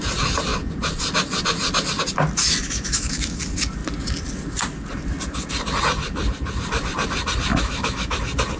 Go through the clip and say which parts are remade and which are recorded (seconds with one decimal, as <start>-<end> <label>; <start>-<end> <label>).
0.0-2.6 recorded; 2.6-3.4 remade; 3.4-7.5 recorded; 7.5-8.2 remade; 8.2-8.6 recorded